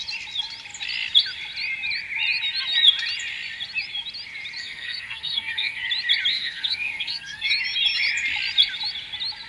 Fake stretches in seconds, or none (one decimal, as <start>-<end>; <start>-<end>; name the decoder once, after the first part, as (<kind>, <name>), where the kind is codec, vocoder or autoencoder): 4.6-5.8 (codec, SNAC); 6.3-7.5